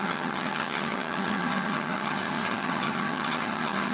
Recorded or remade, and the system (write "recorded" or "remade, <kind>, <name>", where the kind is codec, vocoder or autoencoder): remade, vocoder, HiFi-GAN